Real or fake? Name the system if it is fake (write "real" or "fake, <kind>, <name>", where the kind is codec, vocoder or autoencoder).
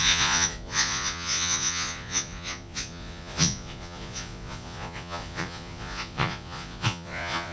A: fake, vocoder, Vocos